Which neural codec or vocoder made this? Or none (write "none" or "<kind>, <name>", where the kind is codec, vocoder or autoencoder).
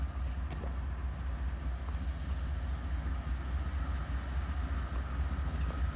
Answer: none